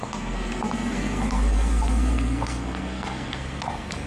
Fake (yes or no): yes